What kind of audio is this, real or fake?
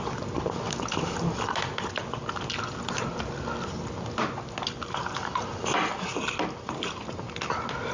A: real